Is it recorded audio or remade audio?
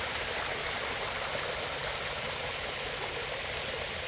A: recorded